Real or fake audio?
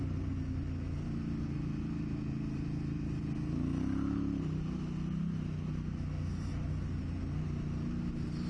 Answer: real